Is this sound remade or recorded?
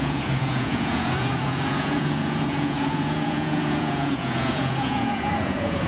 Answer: remade